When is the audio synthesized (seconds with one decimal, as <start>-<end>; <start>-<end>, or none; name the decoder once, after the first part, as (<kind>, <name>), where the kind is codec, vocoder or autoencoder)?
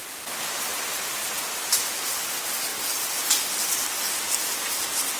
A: 0.7-1.3 (vocoder, BigVGAN v2)